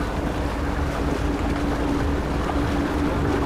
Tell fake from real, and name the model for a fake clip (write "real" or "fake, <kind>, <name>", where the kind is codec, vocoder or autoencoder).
real